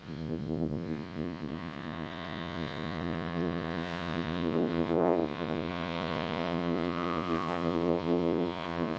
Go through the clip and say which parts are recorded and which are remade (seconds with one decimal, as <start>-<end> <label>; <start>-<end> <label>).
0.0-9.0 remade